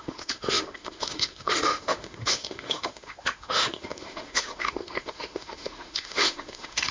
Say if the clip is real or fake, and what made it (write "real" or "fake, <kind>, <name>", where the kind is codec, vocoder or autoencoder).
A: fake, autoencoder, DAC-VAE